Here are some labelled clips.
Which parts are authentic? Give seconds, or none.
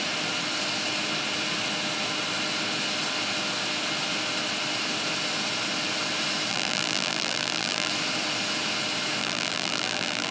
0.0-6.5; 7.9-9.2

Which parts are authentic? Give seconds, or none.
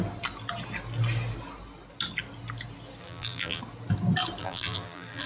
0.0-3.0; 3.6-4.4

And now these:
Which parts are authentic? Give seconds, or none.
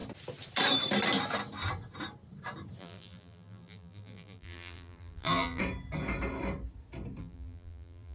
0.0-2.8; 5.6-7.2